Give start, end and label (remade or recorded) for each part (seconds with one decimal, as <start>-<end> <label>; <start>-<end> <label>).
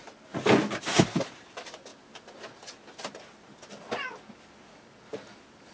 0.0-5.7 recorded